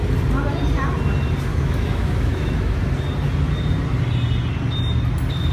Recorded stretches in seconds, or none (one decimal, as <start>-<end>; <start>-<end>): 0.0-1.5; 2.8-5.5